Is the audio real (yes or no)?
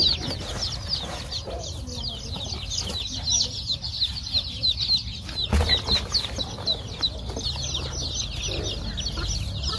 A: yes